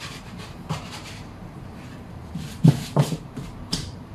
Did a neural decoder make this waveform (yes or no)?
yes